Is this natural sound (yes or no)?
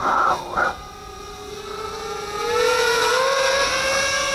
yes